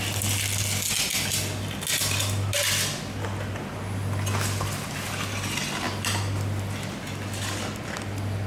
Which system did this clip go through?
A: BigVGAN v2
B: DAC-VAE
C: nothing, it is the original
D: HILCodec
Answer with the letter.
C